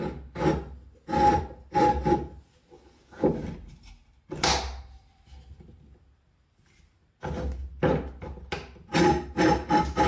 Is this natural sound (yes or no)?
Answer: yes